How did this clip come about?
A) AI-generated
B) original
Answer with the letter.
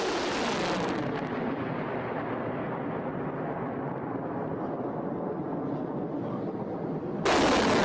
B